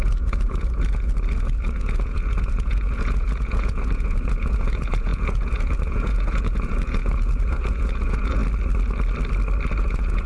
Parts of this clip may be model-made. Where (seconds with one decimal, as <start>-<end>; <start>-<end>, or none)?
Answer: 0.0-8.4; 9.8-10.3